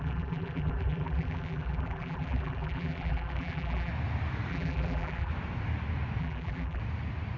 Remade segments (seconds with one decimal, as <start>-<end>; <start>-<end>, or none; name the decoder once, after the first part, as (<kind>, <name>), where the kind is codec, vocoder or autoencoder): 0.0-3.9 (vocoder, BigVGAN v2); 4.5-5.3; 6.2-6.8